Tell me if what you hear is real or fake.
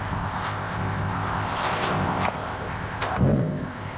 fake